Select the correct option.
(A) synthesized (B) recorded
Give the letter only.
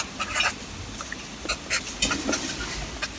B